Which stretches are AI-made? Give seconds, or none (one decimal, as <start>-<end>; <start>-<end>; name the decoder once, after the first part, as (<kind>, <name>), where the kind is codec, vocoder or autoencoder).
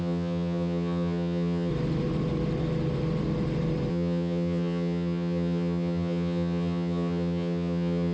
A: 0.0-1.7 (vocoder, HiFi-GAN); 3.9-8.1